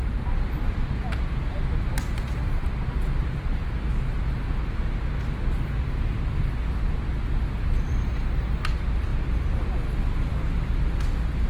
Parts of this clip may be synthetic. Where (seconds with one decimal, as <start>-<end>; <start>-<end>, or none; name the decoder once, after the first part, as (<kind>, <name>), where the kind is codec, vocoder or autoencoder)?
0.0-2.7 (vocoder, BigVGAN v2)